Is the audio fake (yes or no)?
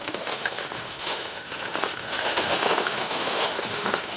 yes